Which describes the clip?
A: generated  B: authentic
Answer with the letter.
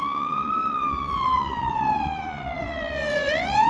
A